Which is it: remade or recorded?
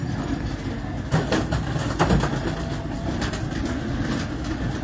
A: recorded